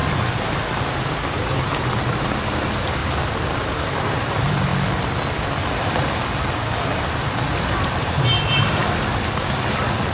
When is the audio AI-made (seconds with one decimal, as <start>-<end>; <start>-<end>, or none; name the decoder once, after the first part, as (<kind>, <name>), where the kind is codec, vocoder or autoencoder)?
1.3-3.0 (vocoder, BigVGAN v2); 3.6-4.7; 7.1-8.8